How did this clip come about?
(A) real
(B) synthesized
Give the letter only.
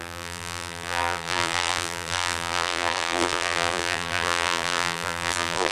B